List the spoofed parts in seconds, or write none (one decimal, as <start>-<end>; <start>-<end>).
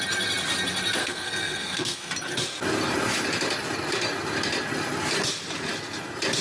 1.0-2.1